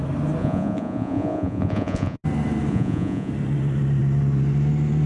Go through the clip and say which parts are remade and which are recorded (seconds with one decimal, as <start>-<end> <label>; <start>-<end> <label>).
0.0-0.4 recorded; 0.4-2.2 remade; 2.2-2.7 recorded; 2.7-3.3 remade; 3.3-5.1 recorded